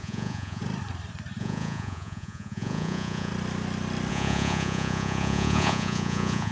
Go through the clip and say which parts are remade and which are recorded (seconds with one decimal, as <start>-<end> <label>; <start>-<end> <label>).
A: 0.0-0.6 remade; 0.6-1.4 recorded; 1.4-3.3 remade; 3.3-4.1 recorded; 4.1-6.5 remade